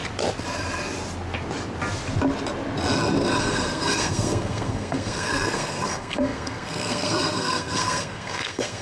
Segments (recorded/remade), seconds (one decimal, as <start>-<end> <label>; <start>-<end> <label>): 0.0-3.4 recorded; 3.4-8.8 remade